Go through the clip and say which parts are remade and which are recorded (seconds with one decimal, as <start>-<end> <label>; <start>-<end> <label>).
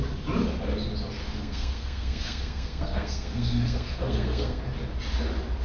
0.0-1.2 recorded; 1.2-4.6 remade; 4.6-5.6 recorded